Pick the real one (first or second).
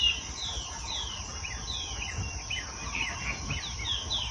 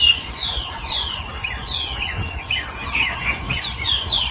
first